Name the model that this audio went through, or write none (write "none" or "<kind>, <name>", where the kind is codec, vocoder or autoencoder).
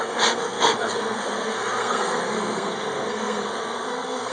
codec, SNAC